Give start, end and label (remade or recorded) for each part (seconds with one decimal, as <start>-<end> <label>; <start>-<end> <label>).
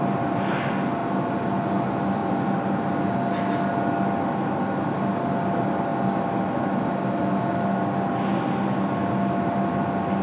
0.0-2.2 recorded; 2.2-3.0 remade; 3.0-10.2 recorded